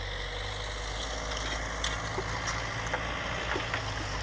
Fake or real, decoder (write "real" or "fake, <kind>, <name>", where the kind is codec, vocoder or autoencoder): real